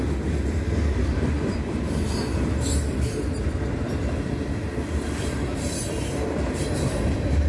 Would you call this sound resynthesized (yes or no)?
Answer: yes